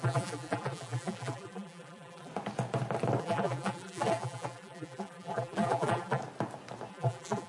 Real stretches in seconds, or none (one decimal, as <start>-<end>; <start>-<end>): 2.3-3.2; 6.2-6.9